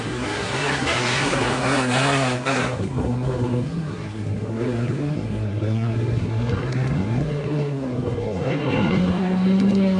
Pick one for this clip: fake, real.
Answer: fake